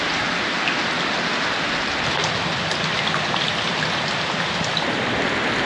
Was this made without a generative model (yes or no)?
yes